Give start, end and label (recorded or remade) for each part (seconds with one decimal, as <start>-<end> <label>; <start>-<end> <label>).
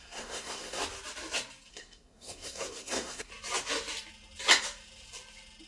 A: 0.0-0.8 remade; 0.8-1.7 recorded; 1.7-3.3 remade; 3.3-5.7 recorded